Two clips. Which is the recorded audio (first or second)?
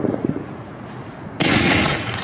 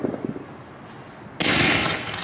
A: second